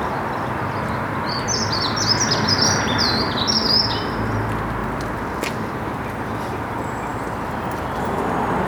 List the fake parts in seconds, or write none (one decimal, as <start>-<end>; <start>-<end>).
4.8-5.7; 7.1-8.1